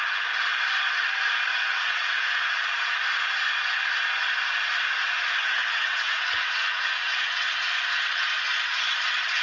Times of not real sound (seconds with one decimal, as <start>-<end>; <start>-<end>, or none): 1.5-2.2; 5.4-7.5